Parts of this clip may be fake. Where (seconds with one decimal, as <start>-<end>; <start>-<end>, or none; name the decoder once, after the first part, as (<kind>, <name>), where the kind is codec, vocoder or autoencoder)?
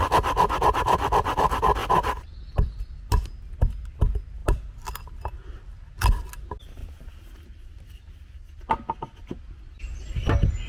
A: none